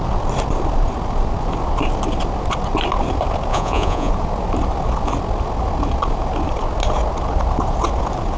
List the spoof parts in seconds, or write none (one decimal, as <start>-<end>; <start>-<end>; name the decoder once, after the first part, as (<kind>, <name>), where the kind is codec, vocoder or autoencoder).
3.5-4.1 (vocoder, Vocos)